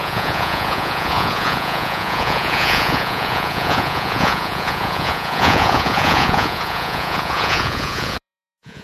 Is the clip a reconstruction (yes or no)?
yes